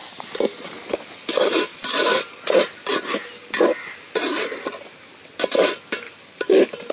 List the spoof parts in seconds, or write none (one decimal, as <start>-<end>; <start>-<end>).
0.0-1.0